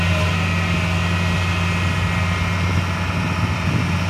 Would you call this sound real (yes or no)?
yes